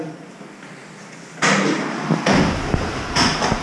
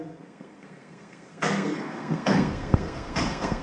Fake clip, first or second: second